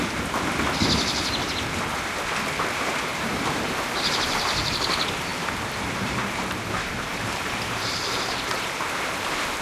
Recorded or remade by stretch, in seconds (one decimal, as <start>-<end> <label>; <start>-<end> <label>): 0.0-3.1 recorded; 3.1-4.7 remade; 4.7-5.3 recorded; 5.3-8.2 remade; 8.2-9.6 recorded